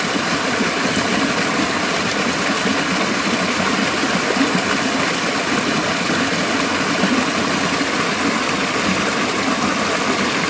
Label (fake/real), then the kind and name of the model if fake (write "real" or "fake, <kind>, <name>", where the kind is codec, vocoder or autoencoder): real